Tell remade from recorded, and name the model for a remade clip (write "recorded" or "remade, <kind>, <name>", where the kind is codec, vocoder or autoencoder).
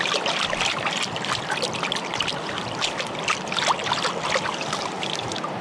recorded